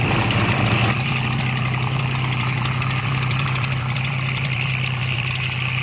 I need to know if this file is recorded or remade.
remade